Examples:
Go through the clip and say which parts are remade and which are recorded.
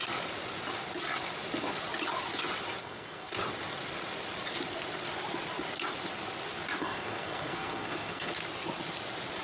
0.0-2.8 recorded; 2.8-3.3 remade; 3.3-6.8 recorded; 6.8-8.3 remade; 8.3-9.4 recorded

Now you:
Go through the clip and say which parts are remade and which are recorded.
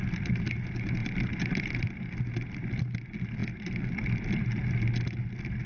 0.0-1.0 recorded; 1.0-2.2 remade; 2.2-3.4 recorded; 3.4-4.0 remade; 4.0-5.7 recorded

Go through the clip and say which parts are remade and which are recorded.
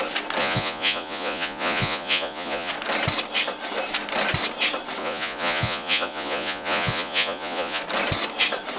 0.0-0.4 recorded; 0.4-2.7 remade; 2.7-5.0 recorded; 5.0-7.8 remade; 7.8-8.8 recorded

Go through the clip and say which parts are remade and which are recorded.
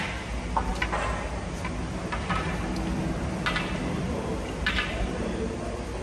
0.0-6.0 recorded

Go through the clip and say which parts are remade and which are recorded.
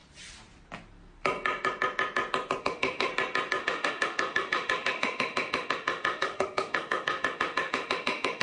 0.0-2.6 recorded; 2.6-3.1 remade; 3.1-3.6 recorded; 3.6-8.4 remade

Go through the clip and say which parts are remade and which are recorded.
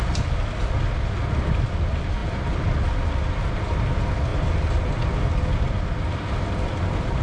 0.0-4.3 recorded; 4.3-4.9 remade; 4.9-7.2 recorded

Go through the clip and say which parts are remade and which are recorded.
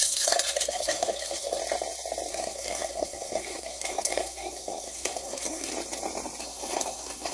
0.0-1.6 remade; 1.6-2.3 recorded; 2.3-5.7 remade; 5.7-6.4 recorded; 6.4-7.3 remade